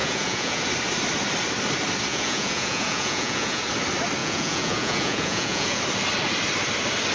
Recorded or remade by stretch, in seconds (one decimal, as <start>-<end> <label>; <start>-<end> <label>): 0.0-0.6 remade; 0.6-2.1 recorded; 2.1-3.6 remade; 3.6-4.2 recorded; 4.2-5.8 remade; 5.8-7.1 recorded

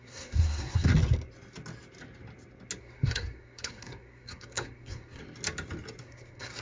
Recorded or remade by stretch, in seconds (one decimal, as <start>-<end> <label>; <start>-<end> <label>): 0.0-0.9 remade; 0.9-2.8 recorded; 2.8-5.2 remade; 5.2-6.0 recorded; 6.0-6.6 remade

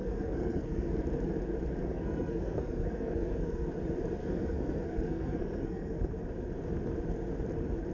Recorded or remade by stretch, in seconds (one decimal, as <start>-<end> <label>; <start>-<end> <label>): 0.0-1.0 remade; 1.0-1.8 recorded; 1.8-3.7 remade; 3.7-4.2 recorded; 4.2-6.1 remade; 6.1-7.9 recorded

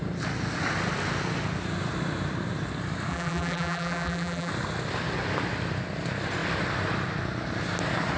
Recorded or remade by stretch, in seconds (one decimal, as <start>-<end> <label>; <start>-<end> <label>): 0.0-3.1 recorded; 3.1-4.5 remade; 4.5-8.2 recorded

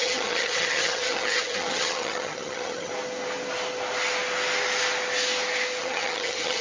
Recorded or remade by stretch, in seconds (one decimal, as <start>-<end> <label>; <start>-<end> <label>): 0.0-2.9 remade; 2.9-5.8 recorded; 5.8-6.6 remade

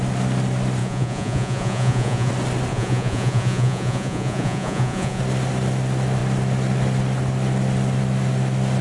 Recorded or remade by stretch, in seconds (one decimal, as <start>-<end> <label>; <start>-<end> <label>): 0.0-0.8 recorded; 0.8-2.3 remade; 2.3-2.7 recorded; 2.7-5.2 remade; 5.2-8.8 recorded